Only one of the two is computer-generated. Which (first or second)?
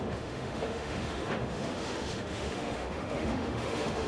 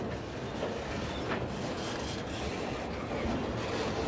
first